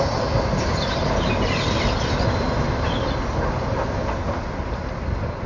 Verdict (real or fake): real